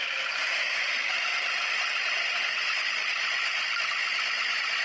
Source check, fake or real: real